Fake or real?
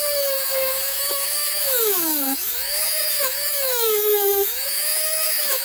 fake